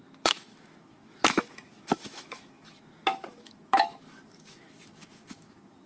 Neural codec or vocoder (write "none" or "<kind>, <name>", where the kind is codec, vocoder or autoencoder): autoencoder, DAC-VAE